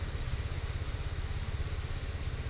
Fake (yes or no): no